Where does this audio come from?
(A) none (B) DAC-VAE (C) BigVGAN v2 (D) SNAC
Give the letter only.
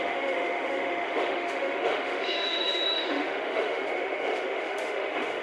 B